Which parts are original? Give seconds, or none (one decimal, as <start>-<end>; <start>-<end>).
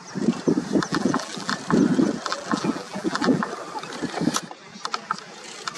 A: 0.0-0.9; 1.5-2.3; 3.4-5.8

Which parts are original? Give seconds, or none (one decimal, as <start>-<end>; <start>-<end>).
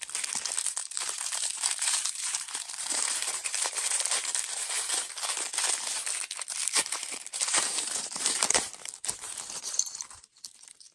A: 0.0-0.8; 5.3-6.6; 10.2-10.9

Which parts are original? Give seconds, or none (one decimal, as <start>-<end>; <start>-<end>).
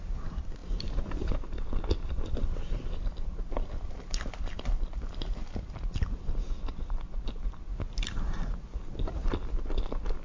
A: 0.0-10.2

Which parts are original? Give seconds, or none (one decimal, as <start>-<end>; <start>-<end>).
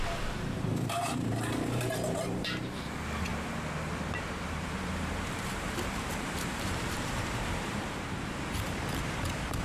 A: 3.3-4.6